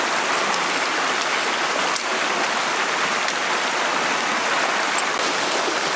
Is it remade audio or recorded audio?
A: recorded